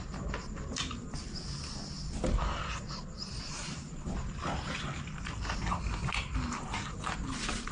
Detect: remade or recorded recorded